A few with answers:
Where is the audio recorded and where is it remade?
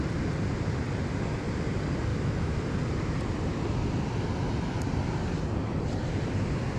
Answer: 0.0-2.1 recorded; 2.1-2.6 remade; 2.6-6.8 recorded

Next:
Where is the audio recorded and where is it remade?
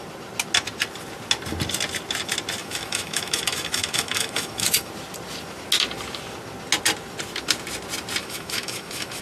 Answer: 0.0-2.6 recorded; 2.6-4.9 remade; 4.9-8.2 recorded; 8.2-9.2 remade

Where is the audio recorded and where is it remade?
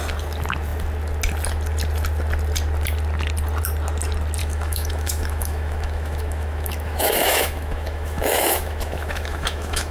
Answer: 0.0-4.4 recorded; 4.4-9.9 remade